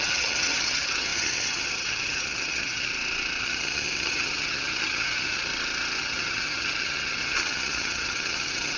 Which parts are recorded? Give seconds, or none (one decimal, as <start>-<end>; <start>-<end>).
2.9-3.4; 5.5-6.0